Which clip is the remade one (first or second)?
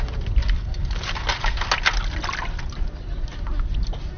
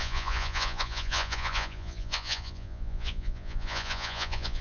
second